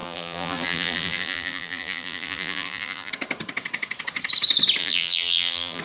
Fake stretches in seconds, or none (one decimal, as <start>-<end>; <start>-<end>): 0.0-3.1; 4.8-5.8